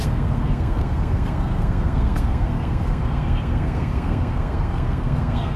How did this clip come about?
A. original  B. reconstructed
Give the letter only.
B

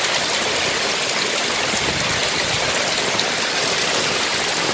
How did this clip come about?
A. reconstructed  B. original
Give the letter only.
B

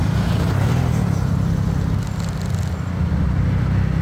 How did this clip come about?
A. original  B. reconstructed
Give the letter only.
A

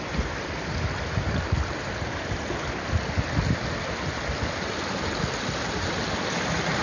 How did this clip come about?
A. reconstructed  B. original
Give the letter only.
B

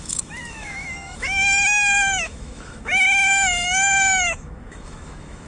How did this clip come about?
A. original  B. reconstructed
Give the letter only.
B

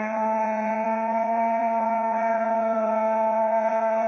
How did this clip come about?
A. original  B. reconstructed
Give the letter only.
B